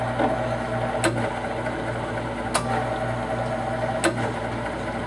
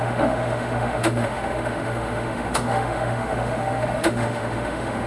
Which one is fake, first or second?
second